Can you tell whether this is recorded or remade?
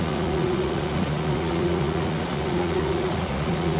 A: remade